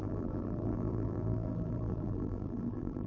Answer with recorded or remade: remade